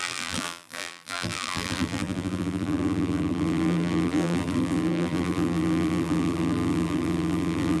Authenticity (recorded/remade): remade